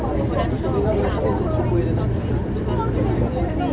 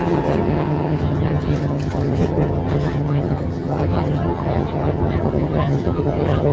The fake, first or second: second